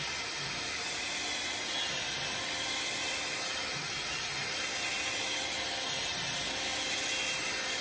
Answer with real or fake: real